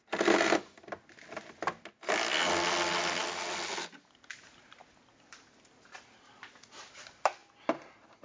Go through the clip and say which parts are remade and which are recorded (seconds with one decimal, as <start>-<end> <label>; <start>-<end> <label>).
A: 0.0-8.2 recorded